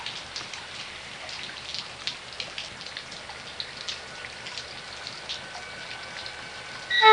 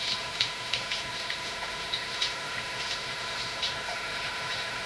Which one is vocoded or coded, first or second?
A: second